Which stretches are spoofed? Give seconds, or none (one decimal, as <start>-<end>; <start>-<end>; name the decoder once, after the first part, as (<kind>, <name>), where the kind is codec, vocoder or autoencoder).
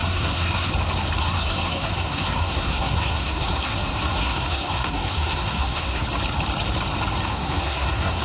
0.0-0.7 (codec, SNAC); 1.2-6.0; 7.3-8.2